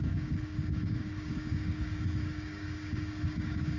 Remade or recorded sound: remade